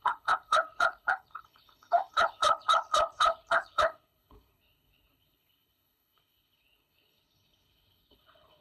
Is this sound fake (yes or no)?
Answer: yes